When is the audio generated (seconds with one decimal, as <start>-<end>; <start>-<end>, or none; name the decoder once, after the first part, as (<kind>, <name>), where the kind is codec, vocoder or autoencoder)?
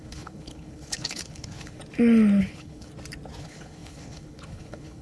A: 0.0-1.8 (codec, HILCodec); 2.4-2.9; 3.4-5.0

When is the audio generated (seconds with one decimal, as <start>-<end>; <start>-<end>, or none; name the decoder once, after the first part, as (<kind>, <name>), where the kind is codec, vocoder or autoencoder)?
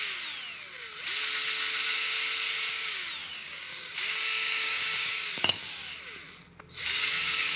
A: 3.2-6.0 (codec, DAC); 6.8-7.6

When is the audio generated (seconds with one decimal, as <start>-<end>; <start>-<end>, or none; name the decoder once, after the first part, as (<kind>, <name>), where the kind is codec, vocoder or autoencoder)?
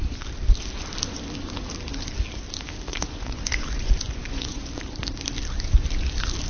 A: 2.9-4.7 (vocoder, Vocos)